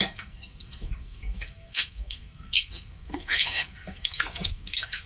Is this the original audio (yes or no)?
no